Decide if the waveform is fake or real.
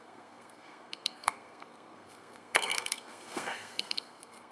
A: fake